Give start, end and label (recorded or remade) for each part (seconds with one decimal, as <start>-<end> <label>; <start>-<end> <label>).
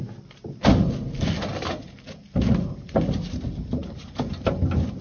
0.0-5.0 recorded